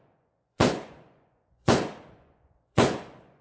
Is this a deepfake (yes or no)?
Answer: yes